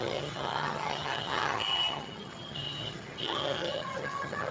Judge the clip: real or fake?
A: fake